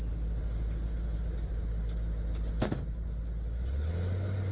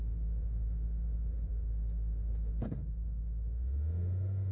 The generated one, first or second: second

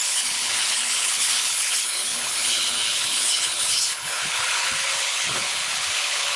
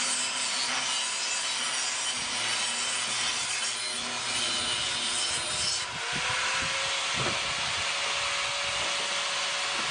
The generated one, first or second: first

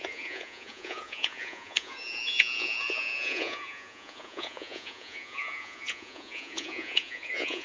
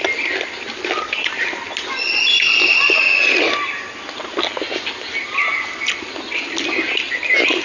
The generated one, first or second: first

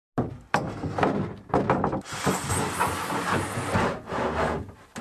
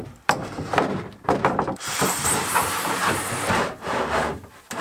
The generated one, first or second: second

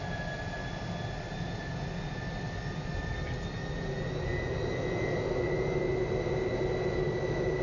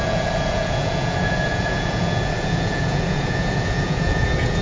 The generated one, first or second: second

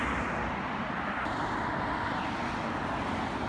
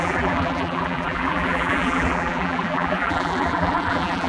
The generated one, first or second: second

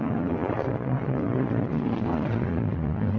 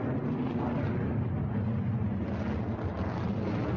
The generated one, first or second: first